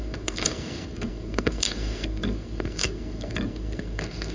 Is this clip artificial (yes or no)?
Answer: yes